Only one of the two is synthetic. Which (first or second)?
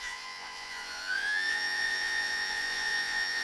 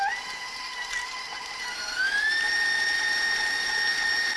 first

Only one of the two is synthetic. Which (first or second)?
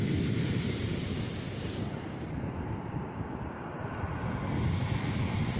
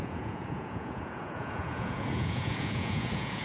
second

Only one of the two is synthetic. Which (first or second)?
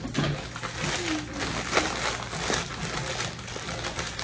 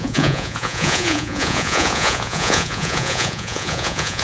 second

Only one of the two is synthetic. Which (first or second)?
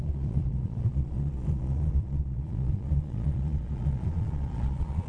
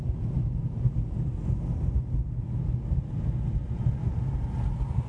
first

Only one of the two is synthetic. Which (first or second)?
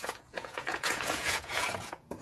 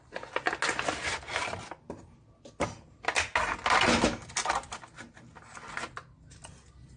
first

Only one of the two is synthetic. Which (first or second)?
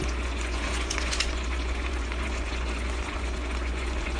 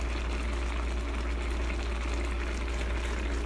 first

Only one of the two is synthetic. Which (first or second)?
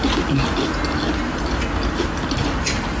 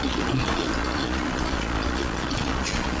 second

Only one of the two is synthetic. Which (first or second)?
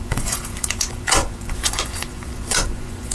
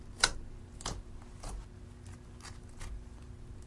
first